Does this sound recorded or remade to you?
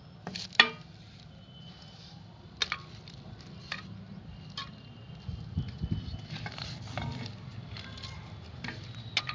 recorded